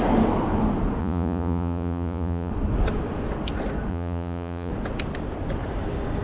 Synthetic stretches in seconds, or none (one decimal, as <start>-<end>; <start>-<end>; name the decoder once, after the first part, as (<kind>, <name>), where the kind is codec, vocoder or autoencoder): 1.0-2.5 (vocoder, Vocos); 3.9-4.7